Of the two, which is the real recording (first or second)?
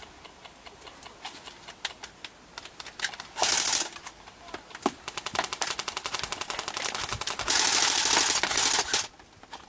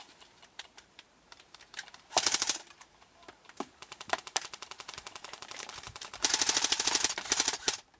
first